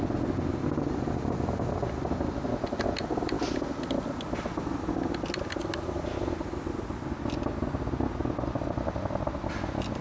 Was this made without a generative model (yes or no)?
yes